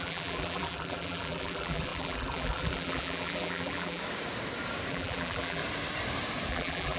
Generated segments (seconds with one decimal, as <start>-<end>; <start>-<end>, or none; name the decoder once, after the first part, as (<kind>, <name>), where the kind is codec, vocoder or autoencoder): 0.0-4.0 (vocoder, BigVGAN v2); 4.9-5.6; 6.5-7.0